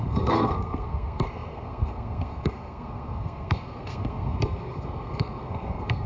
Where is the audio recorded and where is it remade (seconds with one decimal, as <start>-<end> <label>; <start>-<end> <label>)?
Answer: 0.0-6.1 remade